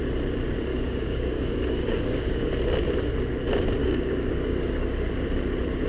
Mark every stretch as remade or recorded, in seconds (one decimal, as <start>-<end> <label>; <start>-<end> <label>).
0.0-0.7 recorded; 0.7-2.5 remade; 2.5-3.8 recorded; 3.8-5.1 remade; 5.1-5.9 recorded